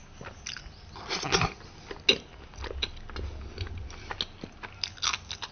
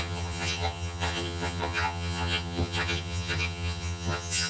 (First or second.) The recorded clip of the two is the first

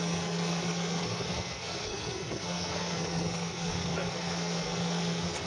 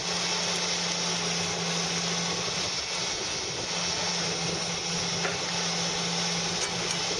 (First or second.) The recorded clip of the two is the second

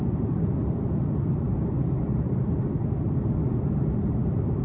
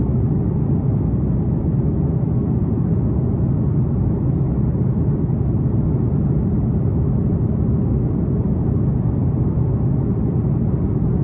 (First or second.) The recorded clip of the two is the second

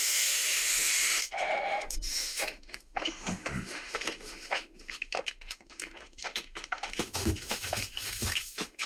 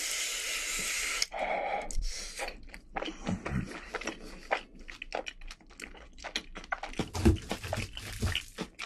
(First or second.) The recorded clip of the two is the second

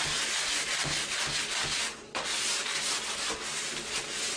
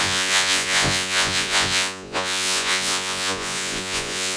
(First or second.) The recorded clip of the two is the first